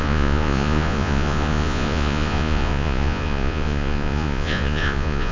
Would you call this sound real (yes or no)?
no